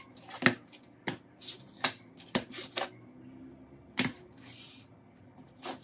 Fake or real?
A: real